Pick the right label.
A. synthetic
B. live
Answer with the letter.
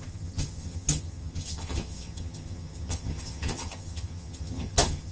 A